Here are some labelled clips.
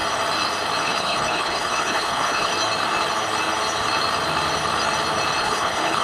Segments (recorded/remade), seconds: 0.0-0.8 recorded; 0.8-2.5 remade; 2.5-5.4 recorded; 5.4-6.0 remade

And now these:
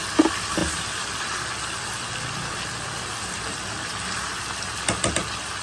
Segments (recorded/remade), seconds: 0.0-5.6 recorded

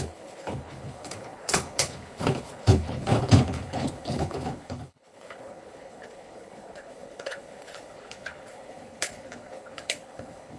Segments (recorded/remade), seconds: 0.0-10.6 remade

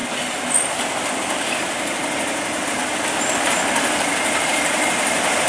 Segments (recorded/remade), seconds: 0.0-5.5 recorded

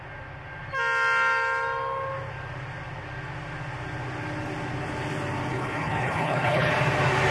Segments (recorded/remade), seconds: 0.0-5.5 recorded; 5.5-6.7 remade; 6.7-7.3 recorded

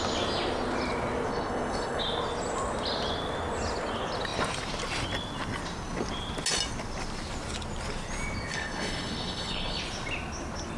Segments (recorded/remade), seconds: 0.0-1.3 recorded; 1.3-2.0 remade; 2.0-8.5 recorded; 8.5-9.8 remade; 9.8-10.8 recorded